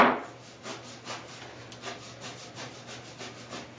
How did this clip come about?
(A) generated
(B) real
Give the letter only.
B